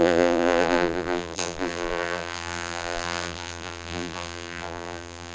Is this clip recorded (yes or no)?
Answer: no